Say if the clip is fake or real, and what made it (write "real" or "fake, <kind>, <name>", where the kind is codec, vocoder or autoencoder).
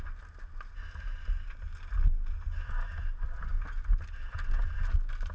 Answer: real